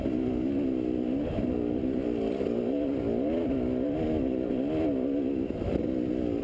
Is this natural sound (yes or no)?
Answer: yes